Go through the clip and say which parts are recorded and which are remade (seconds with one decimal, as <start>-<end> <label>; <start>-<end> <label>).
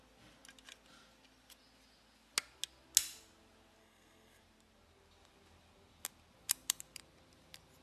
0.0-3.8 recorded; 3.8-4.4 remade; 4.4-7.8 recorded